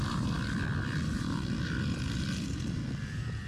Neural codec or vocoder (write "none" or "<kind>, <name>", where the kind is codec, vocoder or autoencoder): none